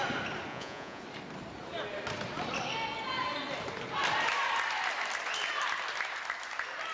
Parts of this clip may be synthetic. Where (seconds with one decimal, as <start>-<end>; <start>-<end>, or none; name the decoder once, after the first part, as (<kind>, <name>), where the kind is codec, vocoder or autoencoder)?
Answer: 0.5-1.0 (vocoder, Vocos)